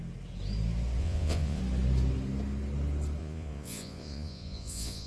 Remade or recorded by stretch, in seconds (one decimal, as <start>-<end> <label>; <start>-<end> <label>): 0.0-1.0 recorded; 1.0-1.6 remade; 1.6-3.2 recorded; 3.2-5.1 remade